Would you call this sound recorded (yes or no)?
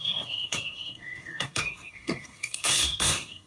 no